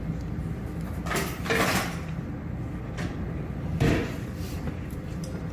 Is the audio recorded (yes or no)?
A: yes